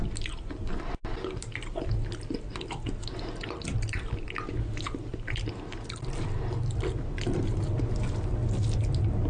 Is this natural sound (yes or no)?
yes